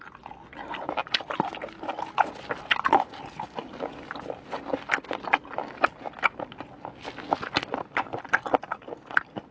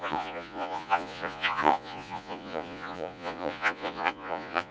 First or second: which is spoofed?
second